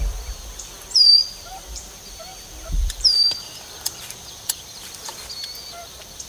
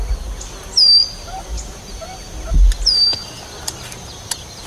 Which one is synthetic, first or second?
first